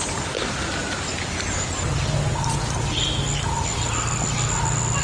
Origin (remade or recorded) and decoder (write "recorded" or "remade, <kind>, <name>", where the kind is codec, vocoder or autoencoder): recorded